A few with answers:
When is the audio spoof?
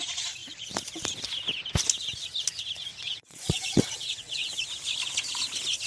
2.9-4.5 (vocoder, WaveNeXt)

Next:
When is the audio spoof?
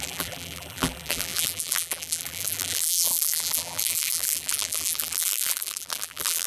0.0-6.5 (vocoder, BigVGAN v2)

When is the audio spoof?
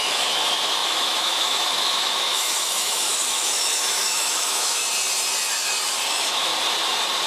0.0-4.8 (autoencoder, DAC-VAE); 6.1-6.5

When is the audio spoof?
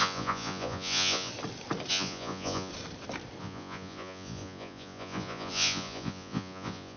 0.0-1.3 (vocoder, Vocos); 1.9-2.7; 3.4-7.0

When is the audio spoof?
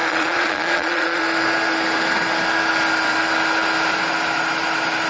0.0-1.2 (vocoder, Vocos)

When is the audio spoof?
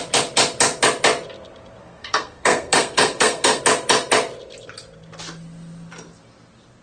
1.8-3.6 (codec, SNAC)